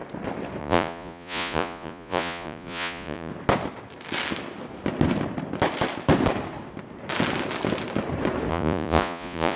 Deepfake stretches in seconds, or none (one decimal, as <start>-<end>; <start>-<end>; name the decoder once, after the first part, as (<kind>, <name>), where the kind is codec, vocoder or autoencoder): 0.6-3.3 (vocoder, Vocos); 8.5-9.6